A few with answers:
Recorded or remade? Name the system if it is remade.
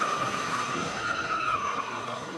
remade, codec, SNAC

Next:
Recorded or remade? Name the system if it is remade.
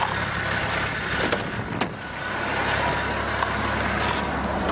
recorded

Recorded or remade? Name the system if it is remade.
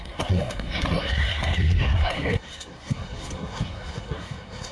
remade, codec, SNAC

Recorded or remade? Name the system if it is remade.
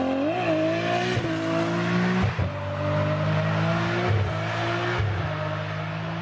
recorded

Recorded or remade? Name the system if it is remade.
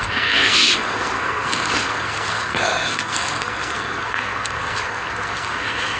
remade, codec, SNAC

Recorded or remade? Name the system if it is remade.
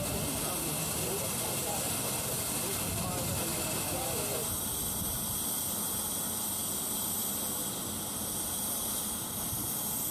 recorded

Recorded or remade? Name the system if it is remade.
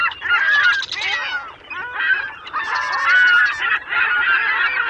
recorded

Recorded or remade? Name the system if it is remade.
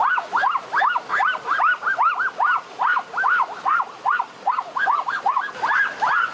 recorded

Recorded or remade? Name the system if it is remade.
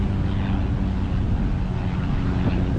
recorded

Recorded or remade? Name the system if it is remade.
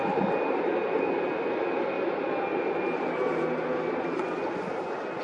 recorded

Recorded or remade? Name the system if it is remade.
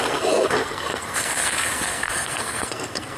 remade, codec, SNAC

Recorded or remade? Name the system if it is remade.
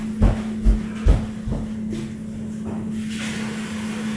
recorded